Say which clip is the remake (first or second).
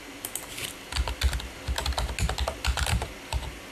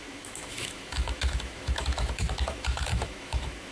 second